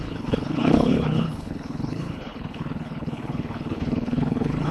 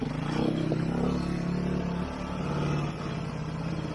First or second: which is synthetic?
first